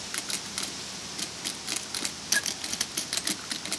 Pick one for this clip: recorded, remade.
recorded